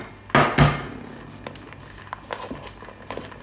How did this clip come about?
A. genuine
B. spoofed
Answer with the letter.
A